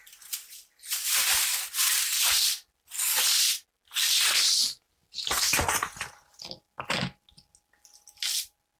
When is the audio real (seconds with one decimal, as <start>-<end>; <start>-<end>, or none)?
1.3-8.8